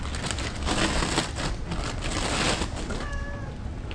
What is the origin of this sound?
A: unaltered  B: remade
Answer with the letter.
A